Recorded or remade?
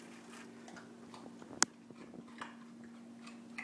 recorded